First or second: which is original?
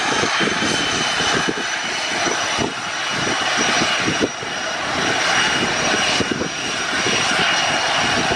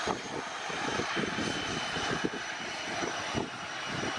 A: first